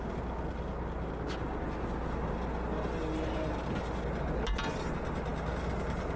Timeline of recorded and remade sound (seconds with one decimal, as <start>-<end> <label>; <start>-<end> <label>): 0.0-6.2 recorded